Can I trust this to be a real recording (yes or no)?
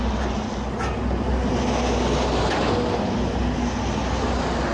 yes